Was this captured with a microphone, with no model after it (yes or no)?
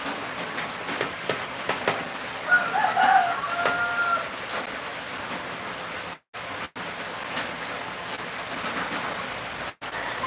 yes